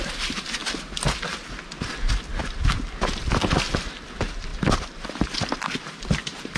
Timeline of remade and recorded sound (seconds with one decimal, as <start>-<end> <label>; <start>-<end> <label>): 0.0-4.5 recorded; 4.5-5.1 remade; 5.1-6.6 recorded

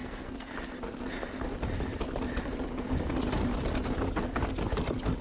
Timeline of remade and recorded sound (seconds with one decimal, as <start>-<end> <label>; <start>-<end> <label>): 0.0-0.5 remade; 0.5-5.2 recorded

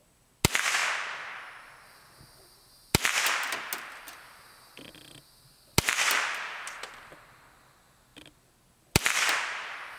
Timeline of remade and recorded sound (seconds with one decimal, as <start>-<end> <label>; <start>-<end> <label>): 0.0-10.0 recorded

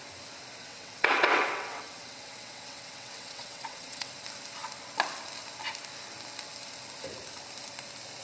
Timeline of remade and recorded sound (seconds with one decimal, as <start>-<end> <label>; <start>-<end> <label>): 0.0-0.6 recorded; 0.6-4.1 remade; 4.1-8.2 recorded